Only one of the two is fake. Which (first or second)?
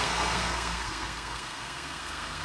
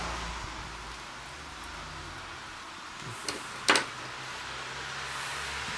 first